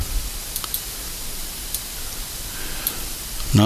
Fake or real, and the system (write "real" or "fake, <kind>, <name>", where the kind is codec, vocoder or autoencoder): real